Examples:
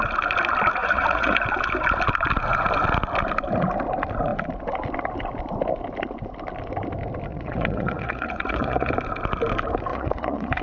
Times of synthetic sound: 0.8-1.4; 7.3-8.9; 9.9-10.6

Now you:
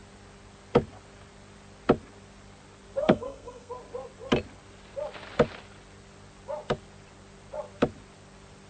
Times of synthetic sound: 3.0-3.7

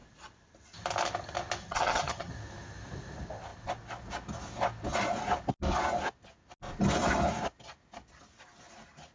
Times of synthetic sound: 1.6-2.3

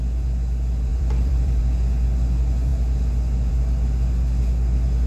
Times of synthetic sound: 0.9-1.6

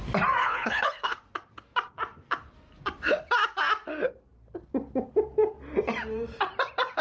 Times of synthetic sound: 0.4-1.2